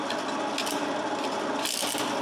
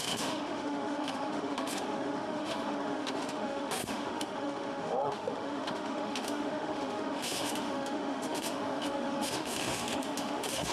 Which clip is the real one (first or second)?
first